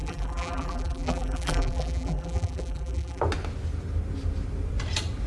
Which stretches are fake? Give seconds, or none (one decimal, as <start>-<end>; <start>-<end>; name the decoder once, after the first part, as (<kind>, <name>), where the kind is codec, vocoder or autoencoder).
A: 0.0-3.2 (vocoder, BigVGAN v2)